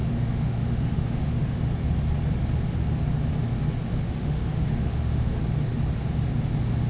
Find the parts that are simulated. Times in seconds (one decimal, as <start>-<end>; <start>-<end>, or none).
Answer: 0.0-1.6; 3.9-5.4